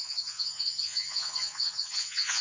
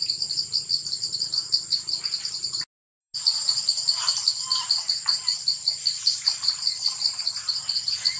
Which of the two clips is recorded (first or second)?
second